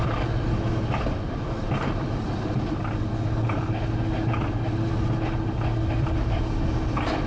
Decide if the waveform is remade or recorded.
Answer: recorded